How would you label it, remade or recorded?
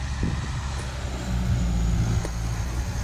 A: recorded